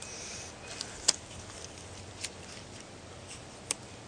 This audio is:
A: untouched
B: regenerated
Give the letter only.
A